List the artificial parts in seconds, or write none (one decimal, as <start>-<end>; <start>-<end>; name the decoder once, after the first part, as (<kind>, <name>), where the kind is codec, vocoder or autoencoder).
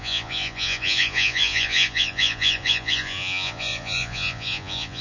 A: 0.0-5.0 (vocoder, Vocos)